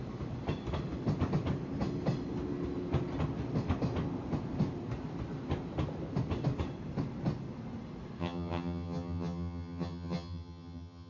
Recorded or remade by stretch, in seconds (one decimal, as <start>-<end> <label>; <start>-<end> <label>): 0.0-8.2 recorded; 8.2-11.1 remade